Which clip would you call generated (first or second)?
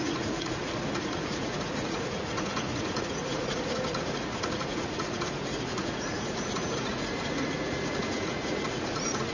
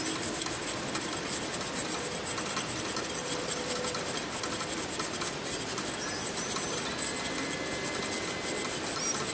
first